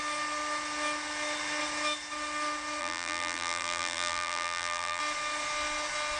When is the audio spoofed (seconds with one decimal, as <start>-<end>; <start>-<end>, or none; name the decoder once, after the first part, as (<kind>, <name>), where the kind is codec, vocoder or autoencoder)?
2.8-5.0 (vocoder, BigVGAN v2)